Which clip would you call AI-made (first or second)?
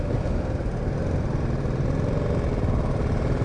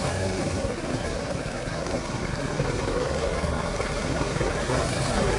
second